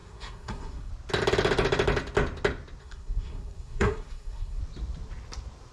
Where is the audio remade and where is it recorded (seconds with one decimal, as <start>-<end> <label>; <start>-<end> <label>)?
0.0-0.9 remade; 0.9-2.8 recorded; 2.8-4.6 remade; 4.6-5.7 recorded